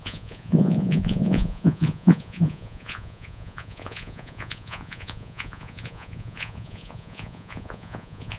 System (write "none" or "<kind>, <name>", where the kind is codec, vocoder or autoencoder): vocoder, Vocos